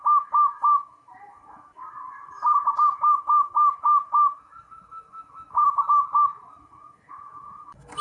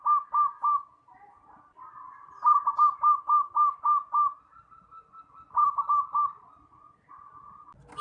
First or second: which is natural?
second